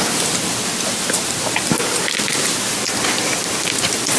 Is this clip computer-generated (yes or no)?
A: no